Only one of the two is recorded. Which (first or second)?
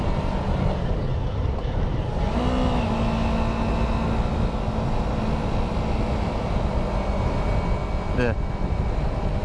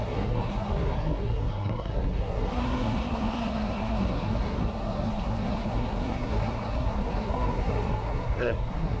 first